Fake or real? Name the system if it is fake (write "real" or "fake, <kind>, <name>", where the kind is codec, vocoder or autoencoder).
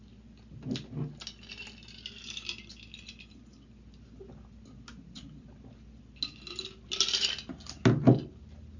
real